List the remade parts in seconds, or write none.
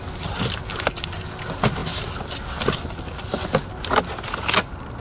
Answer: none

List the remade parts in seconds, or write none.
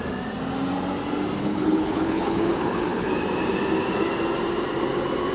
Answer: 1.4-3.1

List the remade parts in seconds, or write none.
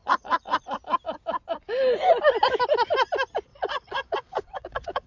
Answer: 0.0-0.8; 3.5-5.1